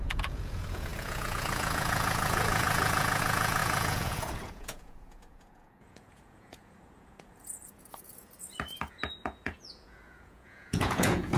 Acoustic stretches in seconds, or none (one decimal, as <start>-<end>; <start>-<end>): none

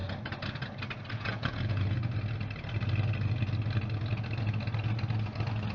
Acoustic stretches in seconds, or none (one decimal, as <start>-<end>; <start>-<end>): 0.0-1.1; 2.0-5.7

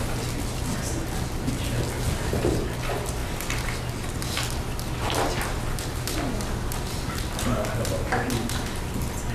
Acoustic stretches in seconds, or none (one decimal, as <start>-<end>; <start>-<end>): 0.0-9.3

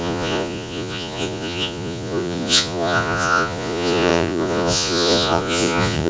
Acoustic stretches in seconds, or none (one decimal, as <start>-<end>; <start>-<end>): none

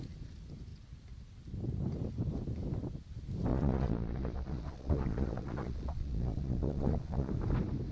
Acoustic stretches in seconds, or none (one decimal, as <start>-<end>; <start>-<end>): 0.0-3.5; 7.3-7.9

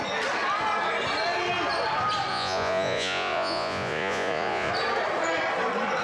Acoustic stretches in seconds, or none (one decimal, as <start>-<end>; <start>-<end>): 0.0-2.3; 4.7-6.0

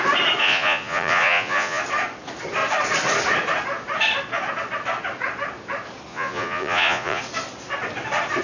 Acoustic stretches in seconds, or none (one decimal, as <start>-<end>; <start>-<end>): 0.0-0.4; 1.8-6.1; 7.2-8.4